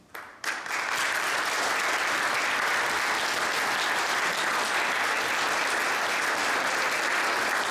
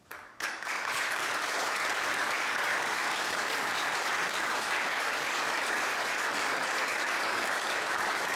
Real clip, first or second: first